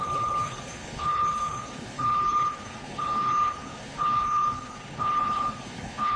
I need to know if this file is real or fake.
fake